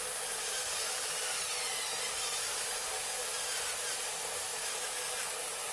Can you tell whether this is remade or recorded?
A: recorded